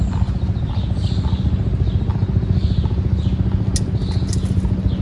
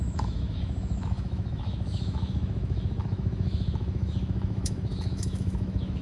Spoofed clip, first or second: second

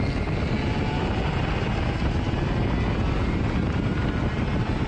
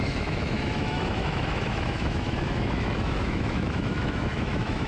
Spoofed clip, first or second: second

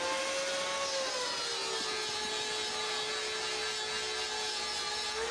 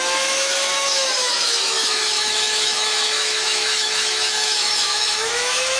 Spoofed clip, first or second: second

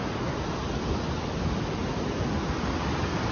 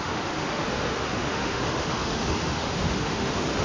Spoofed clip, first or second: second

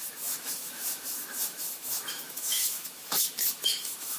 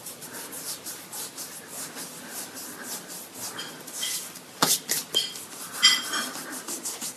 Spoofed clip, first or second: first